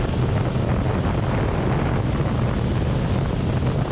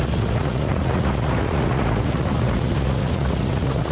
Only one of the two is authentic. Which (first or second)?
first